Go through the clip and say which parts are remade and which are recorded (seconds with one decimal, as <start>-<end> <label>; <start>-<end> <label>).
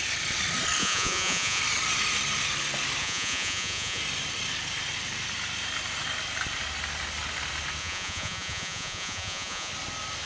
0.0-0.8 recorded; 0.8-1.6 remade; 1.6-3.0 recorded; 3.0-4.0 remade; 4.0-7.8 recorded; 7.8-9.7 remade; 9.7-10.3 recorded